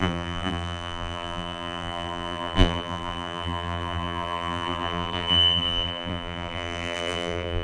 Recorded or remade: remade